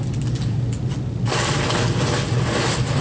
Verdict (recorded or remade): recorded